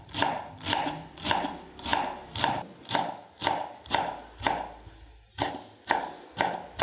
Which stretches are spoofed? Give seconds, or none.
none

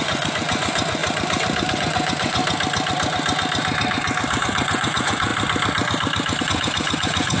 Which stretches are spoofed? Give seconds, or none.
0.0-1.0 (vocoder, Vocos); 1.7-2.4; 4.4-5.3; 6.4-7.4

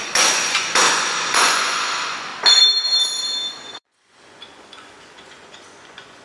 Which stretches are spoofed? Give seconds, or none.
0.0-2.3 (vocoder, Vocos); 3.5-6.2

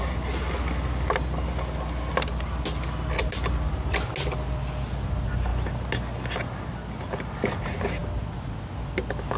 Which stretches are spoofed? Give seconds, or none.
none

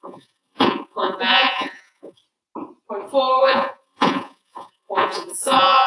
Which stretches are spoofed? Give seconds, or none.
0.0-2.2 (vocoder, Vocos); 3.4-5.9

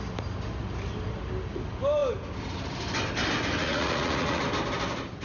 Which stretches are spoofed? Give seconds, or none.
3.6-4.4 (vocoder, Vocos)